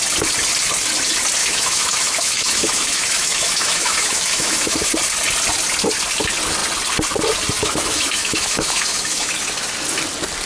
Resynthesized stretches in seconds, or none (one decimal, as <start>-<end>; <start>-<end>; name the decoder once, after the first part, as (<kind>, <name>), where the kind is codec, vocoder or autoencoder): 1.4-4.9 (autoencoder, DAC-VAE); 7.6-9.3